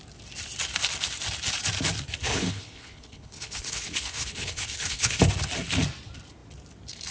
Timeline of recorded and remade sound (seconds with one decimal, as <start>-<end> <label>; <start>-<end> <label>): 0.0-2.2 recorded; 2.2-5.2 remade; 5.2-7.1 recorded

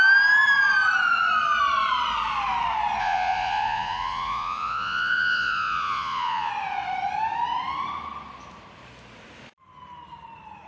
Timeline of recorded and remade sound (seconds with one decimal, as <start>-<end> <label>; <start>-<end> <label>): 0.0-3.0 recorded; 3.0-6.5 remade; 6.5-10.7 recorded

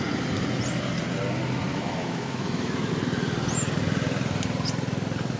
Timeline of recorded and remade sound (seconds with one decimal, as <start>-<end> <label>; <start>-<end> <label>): 0.0-1.7 recorded; 1.7-2.9 remade; 2.9-5.4 recorded

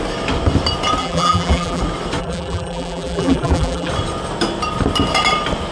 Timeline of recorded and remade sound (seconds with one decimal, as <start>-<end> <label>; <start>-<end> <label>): 0.0-1.0 recorded; 1.0-1.8 remade; 1.8-2.2 recorded; 2.2-3.9 remade; 3.9-5.7 recorded

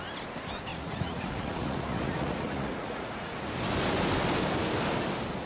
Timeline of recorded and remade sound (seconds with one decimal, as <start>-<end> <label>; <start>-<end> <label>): 0.0-0.7 recorded; 0.7-3.4 remade; 3.4-5.5 recorded

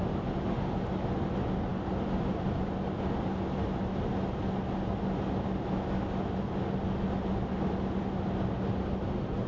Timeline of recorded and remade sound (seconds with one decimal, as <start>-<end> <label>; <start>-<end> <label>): 0.0-9.5 recorded

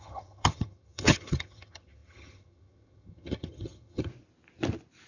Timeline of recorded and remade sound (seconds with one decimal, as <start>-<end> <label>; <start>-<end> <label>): 0.0-4.1 remade; 4.1-5.1 recorded